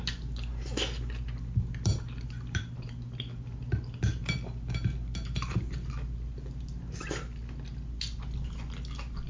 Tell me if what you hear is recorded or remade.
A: recorded